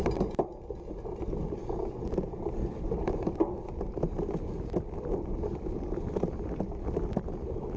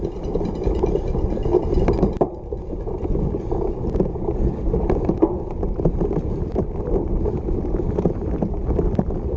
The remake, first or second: second